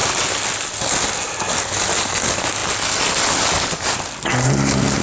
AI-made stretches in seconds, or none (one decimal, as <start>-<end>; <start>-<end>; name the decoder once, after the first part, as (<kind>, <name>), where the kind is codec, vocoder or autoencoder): none